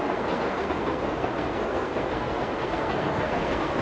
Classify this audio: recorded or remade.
remade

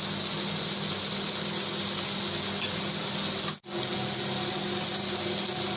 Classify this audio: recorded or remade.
recorded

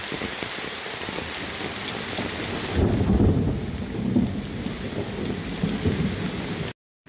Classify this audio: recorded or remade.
recorded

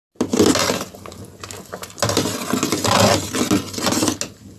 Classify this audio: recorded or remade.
recorded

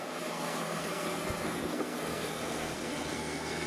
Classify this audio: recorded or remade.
remade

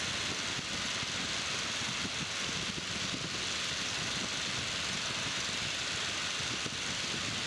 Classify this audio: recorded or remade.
recorded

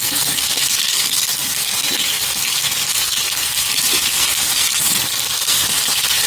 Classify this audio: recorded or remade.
remade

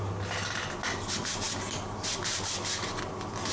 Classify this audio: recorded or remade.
recorded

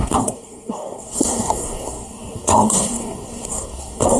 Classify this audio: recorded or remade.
remade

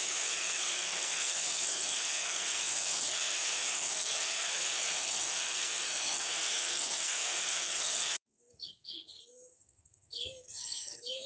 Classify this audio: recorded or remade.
remade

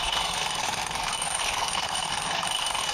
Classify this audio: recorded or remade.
remade